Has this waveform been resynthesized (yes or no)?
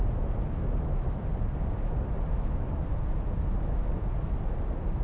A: no